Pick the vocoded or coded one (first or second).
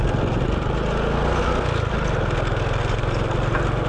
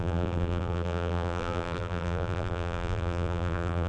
second